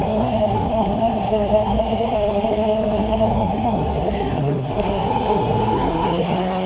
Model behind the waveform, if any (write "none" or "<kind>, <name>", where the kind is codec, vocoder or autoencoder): codec, SNAC